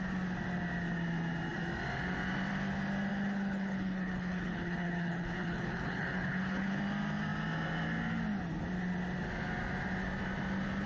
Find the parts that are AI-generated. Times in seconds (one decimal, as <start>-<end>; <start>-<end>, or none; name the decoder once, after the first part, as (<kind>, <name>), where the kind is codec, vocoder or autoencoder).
3.1-6.8 (codec, HILCodec)